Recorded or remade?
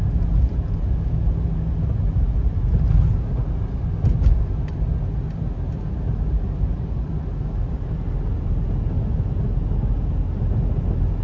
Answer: recorded